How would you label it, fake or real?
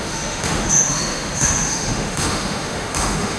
fake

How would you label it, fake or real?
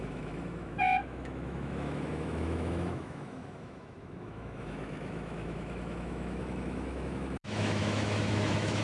fake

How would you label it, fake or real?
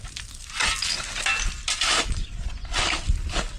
real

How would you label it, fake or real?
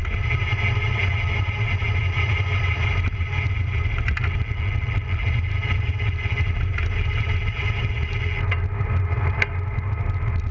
real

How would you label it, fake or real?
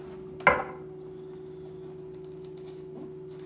real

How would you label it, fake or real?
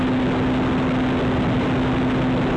real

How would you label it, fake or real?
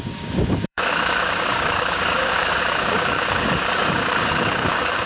fake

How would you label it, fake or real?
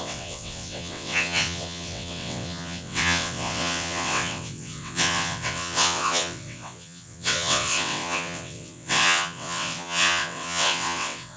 fake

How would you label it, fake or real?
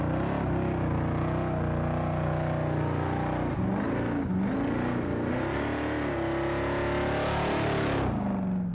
real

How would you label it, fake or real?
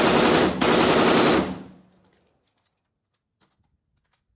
real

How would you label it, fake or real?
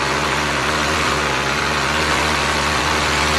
fake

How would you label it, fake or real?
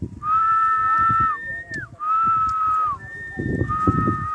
real